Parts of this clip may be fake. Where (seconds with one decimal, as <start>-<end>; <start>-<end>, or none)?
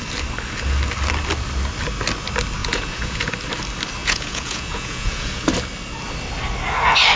2.6-3.3; 4.0-5.4